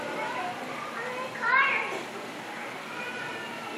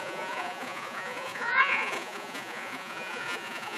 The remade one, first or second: second